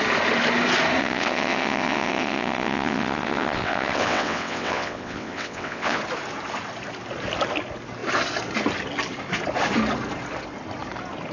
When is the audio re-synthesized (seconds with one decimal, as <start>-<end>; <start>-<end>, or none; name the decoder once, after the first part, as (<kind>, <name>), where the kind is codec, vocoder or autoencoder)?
1.0-6.0 (vocoder, WaveNeXt)